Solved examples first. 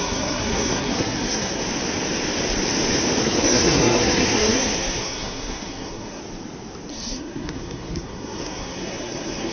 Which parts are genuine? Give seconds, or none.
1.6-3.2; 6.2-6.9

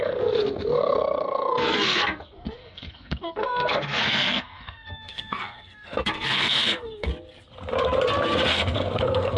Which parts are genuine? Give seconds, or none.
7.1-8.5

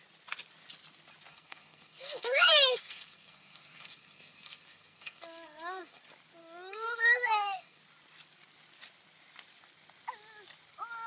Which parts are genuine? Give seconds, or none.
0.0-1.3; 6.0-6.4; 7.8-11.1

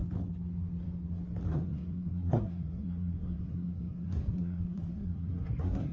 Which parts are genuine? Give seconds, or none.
0.0-1.5